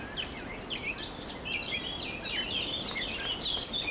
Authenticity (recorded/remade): recorded